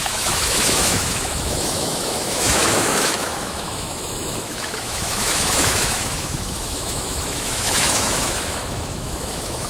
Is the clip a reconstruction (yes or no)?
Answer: yes